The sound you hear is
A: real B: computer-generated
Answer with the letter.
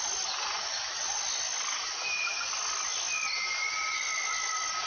A